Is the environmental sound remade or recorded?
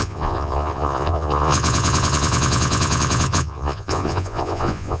remade